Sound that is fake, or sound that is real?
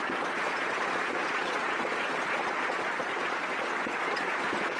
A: fake